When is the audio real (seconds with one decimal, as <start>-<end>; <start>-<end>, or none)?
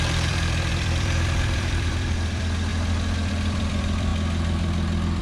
2.7-3.3; 4.1-5.2